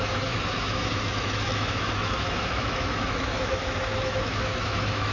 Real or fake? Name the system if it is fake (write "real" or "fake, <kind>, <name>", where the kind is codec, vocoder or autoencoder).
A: fake, autoencoder, DAC-VAE